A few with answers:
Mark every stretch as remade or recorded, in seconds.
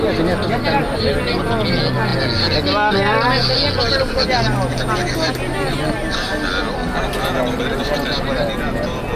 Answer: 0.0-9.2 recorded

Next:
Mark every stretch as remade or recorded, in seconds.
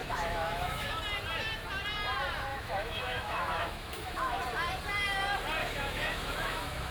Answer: 0.0-1.0 remade; 1.0-2.5 recorded; 2.5-4.4 remade; 4.4-5.6 recorded; 5.6-6.9 remade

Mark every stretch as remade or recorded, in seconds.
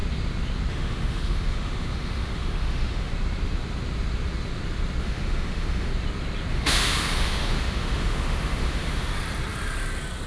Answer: 0.0-0.7 recorded; 0.7-3.1 remade; 3.1-5.0 recorded; 5.0-5.9 remade; 5.9-6.5 recorded; 6.5-9.1 remade; 9.1-10.3 recorded